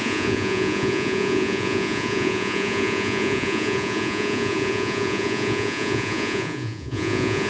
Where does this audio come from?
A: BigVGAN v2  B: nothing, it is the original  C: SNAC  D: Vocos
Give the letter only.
D